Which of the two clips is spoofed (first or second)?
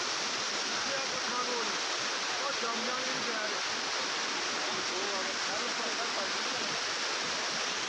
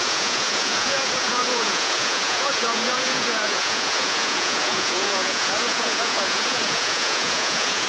second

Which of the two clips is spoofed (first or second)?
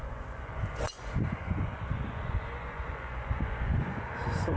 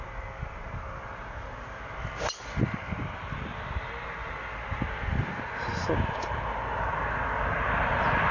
first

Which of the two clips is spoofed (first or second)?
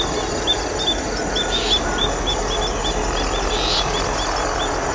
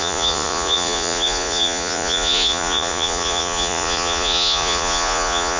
second